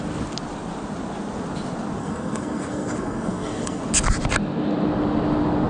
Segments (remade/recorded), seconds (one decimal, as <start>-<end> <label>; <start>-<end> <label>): 0.0-2.0 recorded; 2.0-3.8 remade; 3.8-5.7 recorded